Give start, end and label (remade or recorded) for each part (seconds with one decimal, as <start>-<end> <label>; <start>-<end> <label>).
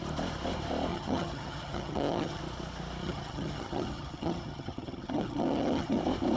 0.0-0.9 recorded; 0.9-2.4 remade; 2.4-3.0 recorded; 3.0-6.0 remade; 6.0-6.4 recorded